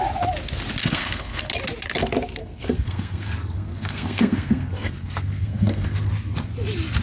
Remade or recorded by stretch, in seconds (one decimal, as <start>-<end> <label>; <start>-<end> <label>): 0.0-0.8 recorded; 0.8-1.4 remade; 1.4-2.4 recorded; 2.4-6.1 remade; 6.1-7.0 recorded